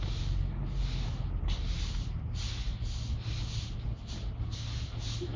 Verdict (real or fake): real